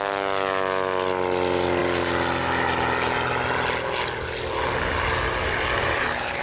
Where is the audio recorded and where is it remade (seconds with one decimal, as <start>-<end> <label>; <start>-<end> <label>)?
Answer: 0.0-6.4 recorded